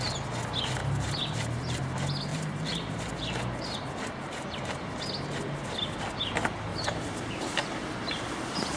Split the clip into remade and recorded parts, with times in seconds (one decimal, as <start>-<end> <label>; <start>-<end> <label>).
0.0-0.8 recorded; 0.8-1.8 remade; 1.8-2.3 recorded; 2.3-5.0 remade; 5.0-6.7 recorded; 6.7-8.0 remade; 8.0-8.8 recorded